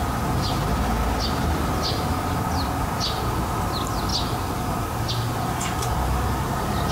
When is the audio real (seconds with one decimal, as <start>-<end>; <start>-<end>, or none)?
0.0-6.9